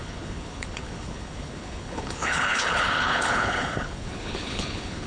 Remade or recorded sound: remade